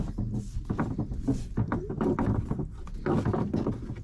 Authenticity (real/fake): real